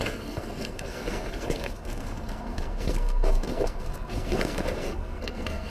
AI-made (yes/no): yes